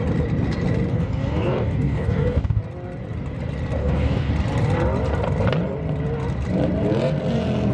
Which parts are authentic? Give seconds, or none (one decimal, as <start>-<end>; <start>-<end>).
0.0-0.9; 2.6-3.8; 4.3-7.7